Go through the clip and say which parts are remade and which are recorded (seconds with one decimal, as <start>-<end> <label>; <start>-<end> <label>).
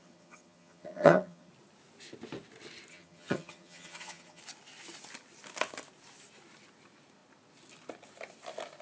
0.0-1.5 remade; 1.5-2.9 recorded; 2.9-4.4 remade; 4.4-8.8 recorded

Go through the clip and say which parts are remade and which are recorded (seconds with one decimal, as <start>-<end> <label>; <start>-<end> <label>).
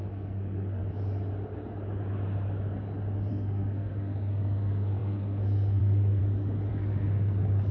0.0-0.8 remade; 0.8-3.3 recorded; 3.3-6.2 remade; 6.2-6.7 recorded; 6.7-7.7 remade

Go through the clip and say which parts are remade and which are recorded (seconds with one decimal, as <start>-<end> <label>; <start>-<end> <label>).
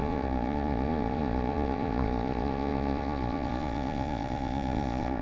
0.0-5.2 remade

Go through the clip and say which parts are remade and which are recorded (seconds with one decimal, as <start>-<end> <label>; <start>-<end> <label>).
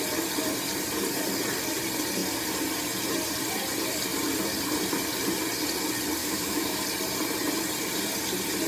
0.0-6.2 recorded; 6.2-6.8 remade; 6.8-8.7 recorded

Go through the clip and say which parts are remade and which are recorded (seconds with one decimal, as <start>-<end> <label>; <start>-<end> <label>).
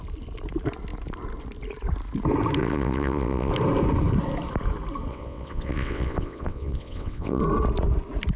0.0-2.6 recorded; 2.6-3.5 remade; 3.5-5.1 recorded; 5.1-7.4 remade; 7.4-8.4 recorded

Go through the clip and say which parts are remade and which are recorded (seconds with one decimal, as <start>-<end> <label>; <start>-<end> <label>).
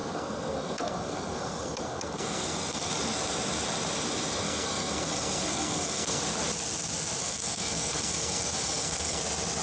0.0-2.9 remade; 2.9-4.4 recorded; 4.4-6.2 remade; 6.2-7.2 recorded; 7.2-9.2 remade; 9.2-9.6 recorded